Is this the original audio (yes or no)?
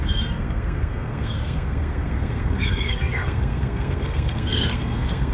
no